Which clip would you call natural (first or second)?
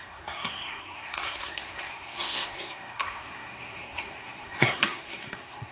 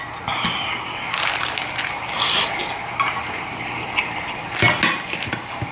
second